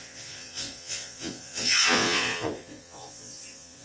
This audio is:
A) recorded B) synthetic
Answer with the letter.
B